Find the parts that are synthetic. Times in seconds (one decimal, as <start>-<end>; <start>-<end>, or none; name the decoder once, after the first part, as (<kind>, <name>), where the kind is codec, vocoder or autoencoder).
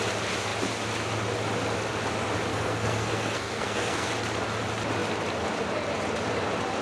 2.5-4.1 (codec, SNAC)